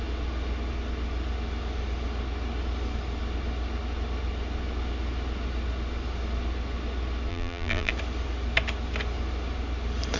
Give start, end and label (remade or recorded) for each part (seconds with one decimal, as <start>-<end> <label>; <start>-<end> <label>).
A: 0.0-7.3 recorded; 7.3-7.9 remade; 7.9-10.2 recorded